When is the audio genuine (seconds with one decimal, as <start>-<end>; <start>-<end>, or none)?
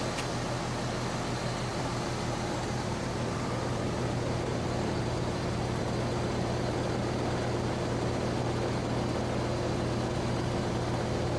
0.0-1.7; 5.8-11.4